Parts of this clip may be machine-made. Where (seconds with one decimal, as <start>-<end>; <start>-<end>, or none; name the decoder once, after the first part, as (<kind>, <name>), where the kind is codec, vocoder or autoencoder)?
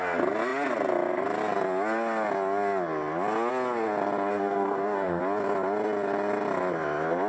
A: 4.3-5.2 (codec, DAC)